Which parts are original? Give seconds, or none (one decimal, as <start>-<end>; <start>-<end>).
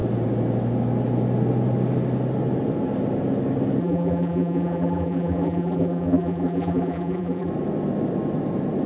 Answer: 0.0-3.8; 7.5-8.9